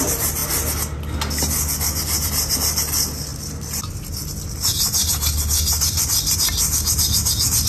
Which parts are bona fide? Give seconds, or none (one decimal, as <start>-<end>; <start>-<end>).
0.0-7.7